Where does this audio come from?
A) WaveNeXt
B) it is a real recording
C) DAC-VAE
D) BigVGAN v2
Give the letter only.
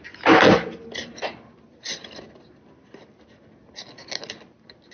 B